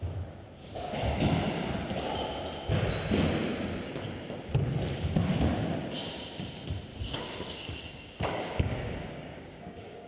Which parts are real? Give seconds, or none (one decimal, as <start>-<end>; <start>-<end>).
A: 0.0-0.6; 1.2-6.9